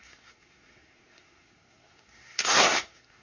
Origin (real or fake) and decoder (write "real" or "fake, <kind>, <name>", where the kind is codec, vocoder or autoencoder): fake, codec, SNAC